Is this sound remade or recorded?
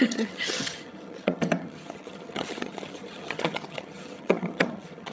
remade